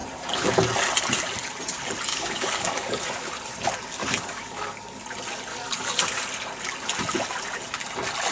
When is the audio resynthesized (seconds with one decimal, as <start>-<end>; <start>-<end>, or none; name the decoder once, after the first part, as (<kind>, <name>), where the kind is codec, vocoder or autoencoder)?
2.1-3.3 (codec, DAC); 4.0-5.0; 5.5-6.0